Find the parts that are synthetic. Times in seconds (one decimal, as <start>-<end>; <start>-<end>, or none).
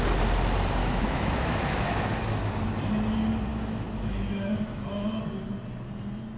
0.8-2.1; 3.5-5.2